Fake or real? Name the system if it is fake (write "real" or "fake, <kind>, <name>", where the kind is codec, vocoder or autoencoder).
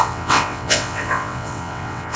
fake, vocoder, WaveNeXt